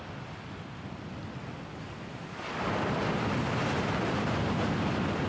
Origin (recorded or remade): recorded